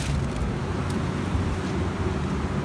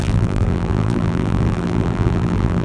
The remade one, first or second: second